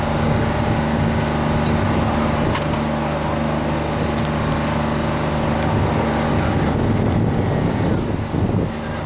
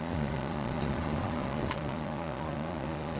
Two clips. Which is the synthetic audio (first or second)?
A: second